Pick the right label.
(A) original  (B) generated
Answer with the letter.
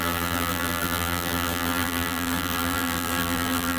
B